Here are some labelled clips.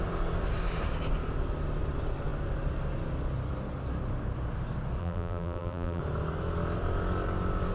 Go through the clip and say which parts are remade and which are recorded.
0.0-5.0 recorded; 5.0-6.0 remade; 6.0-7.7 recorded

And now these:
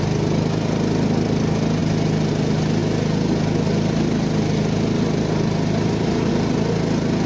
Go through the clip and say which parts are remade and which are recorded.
0.0-7.3 recorded